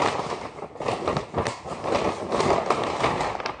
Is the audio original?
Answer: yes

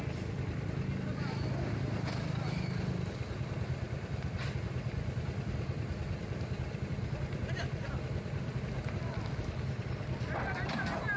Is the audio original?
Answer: yes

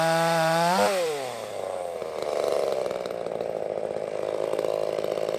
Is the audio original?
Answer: no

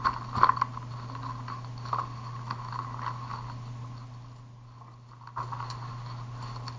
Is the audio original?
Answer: yes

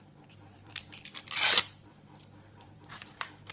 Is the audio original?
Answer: no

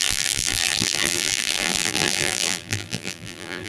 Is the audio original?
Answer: no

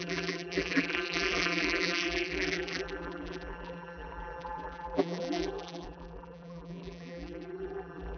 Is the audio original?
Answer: no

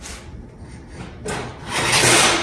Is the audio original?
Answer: no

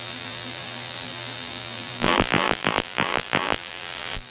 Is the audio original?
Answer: no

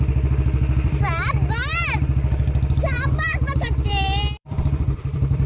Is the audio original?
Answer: no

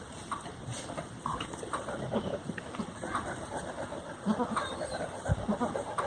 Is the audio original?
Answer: yes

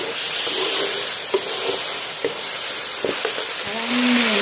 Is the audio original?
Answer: yes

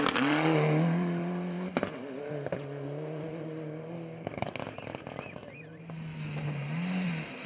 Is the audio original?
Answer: yes